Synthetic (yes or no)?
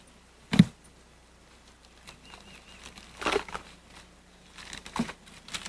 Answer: no